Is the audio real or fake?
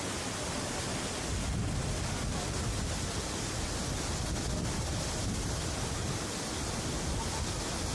real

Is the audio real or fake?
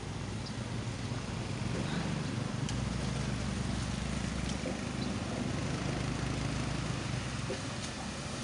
real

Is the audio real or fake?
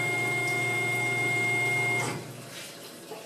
real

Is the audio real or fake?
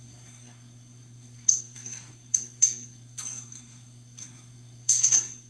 fake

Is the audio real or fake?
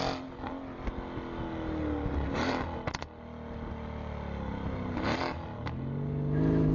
real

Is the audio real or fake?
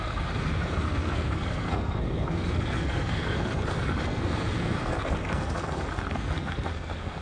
fake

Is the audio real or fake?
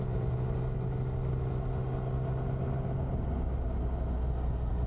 real